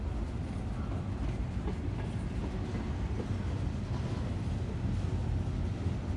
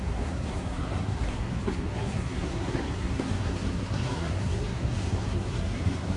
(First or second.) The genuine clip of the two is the first